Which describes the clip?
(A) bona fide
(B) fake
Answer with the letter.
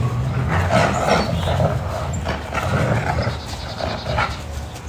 A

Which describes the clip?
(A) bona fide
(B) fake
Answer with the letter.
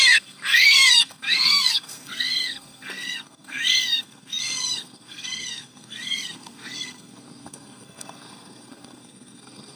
B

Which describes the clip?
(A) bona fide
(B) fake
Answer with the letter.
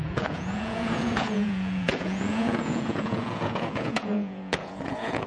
B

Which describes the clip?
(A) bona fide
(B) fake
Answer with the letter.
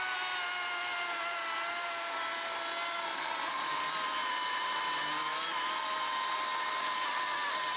A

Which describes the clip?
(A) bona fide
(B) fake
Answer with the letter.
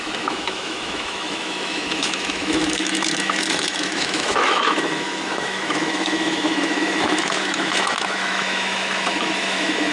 B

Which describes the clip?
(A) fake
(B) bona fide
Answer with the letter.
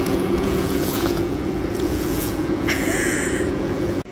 A